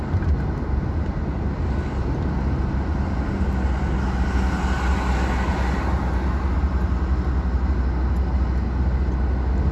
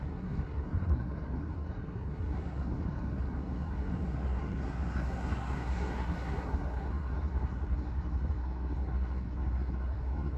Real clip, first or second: first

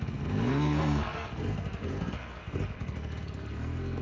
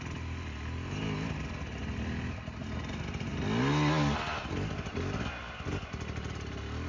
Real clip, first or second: second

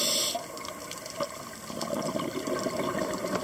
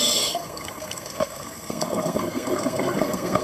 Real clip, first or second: first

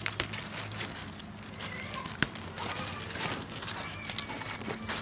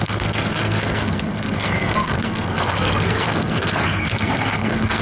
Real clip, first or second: first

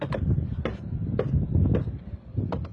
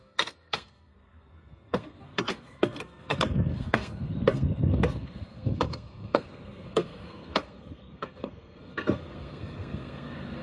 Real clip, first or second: first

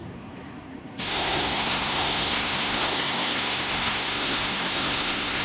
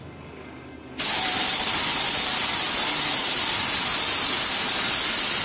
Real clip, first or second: second